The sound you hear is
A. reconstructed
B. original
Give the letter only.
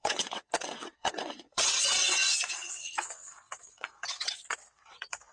A